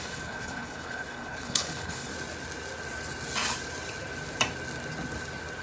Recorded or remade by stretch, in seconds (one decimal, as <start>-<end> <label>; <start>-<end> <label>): 0.0-2.1 remade; 2.1-5.6 recorded